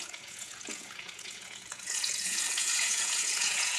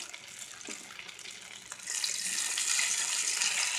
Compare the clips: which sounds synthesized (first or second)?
first